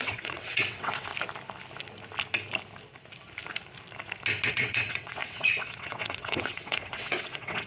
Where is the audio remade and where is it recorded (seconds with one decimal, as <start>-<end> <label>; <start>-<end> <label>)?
0.0-1.1 remade; 1.1-4.5 recorded; 4.5-7.7 remade